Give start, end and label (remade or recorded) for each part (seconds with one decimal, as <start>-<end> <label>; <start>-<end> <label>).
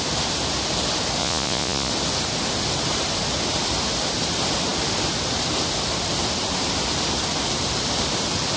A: 0.0-1.2 recorded; 1.2-1.9 remade; 1.9-8.6 recorded